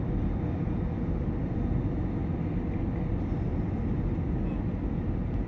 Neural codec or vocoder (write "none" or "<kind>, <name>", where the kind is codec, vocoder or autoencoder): none